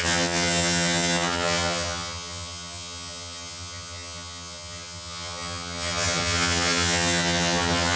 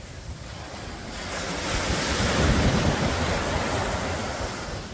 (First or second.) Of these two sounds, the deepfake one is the first